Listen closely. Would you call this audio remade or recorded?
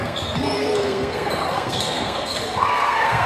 remade